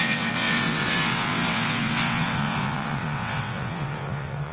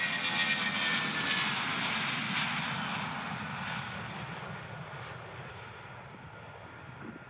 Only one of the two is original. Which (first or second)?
second